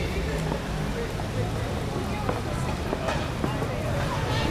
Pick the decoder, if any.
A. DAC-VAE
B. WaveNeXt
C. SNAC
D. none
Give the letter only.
D